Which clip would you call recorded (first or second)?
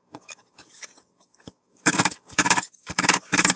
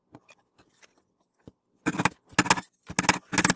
second